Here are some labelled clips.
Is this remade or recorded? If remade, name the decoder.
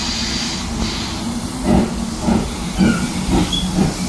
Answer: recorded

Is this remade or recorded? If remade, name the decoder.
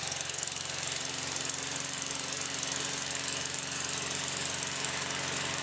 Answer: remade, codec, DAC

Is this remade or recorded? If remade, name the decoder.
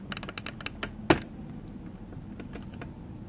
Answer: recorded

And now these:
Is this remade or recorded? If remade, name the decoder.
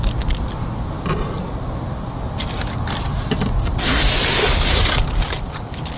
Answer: recorded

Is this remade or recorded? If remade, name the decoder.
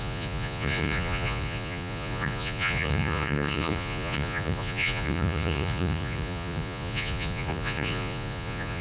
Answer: remade, vocoder, Vocos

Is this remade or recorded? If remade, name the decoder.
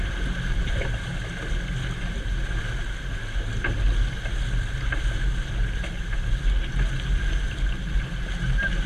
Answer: recorded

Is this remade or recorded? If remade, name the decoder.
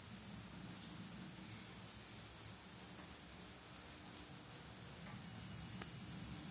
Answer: recorded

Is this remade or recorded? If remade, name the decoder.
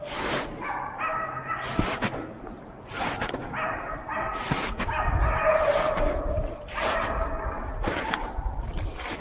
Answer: recorded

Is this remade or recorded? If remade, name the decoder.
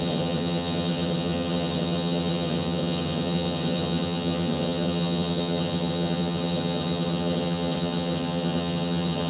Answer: remade, vocoder, HiFi-GAN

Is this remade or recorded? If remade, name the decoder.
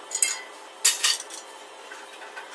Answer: recorded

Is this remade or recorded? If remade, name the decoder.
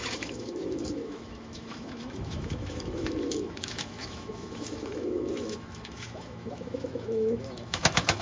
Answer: remade, autoencoder, DAC-VAE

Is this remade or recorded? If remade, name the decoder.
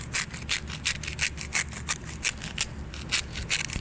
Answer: recorded